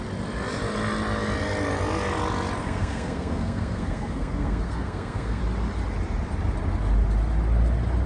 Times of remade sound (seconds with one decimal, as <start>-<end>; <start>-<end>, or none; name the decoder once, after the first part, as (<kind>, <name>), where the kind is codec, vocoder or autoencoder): 2.6-5.4 (codec, SNAC)